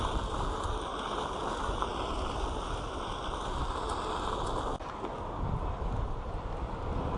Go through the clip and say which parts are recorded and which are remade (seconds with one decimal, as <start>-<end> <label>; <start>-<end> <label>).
0.0-7.2 recorded